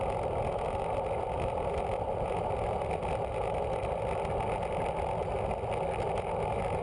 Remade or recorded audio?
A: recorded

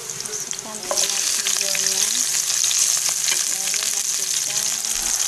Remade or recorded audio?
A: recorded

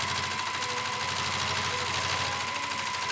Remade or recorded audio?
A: recorded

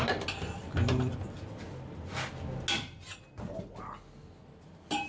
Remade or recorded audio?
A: recorded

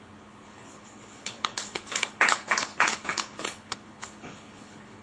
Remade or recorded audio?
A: remade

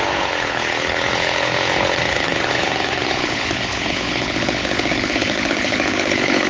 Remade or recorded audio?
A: remade